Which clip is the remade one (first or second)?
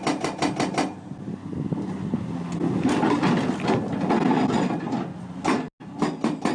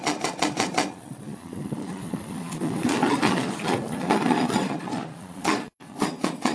second